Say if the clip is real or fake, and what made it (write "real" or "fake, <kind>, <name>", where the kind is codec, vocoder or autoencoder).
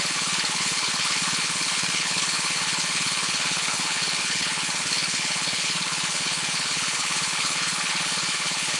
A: fake, codec, HILCodec